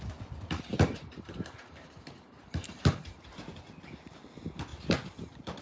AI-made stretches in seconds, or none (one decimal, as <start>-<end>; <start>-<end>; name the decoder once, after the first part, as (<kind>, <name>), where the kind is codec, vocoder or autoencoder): 0.7-3.4 (vocoder, BigVGAN v2)